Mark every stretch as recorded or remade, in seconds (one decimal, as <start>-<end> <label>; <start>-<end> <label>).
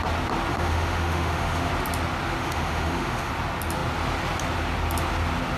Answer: 0.0-0.5 recorded; 0.5-1.7 remade; 1.7-2.4 recorded; 2.4-3.3 remade; 3.3-5.6 recorded